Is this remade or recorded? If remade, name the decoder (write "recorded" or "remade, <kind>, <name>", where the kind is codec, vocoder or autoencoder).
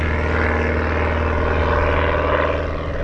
recorded